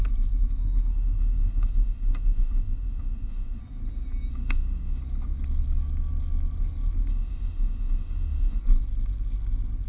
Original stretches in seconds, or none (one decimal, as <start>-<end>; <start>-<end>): 0.0-0.9; 3.6-4.3; 5.0-7.1; 8.6-9.9